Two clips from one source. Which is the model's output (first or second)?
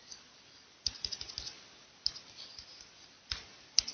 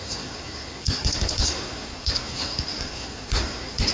second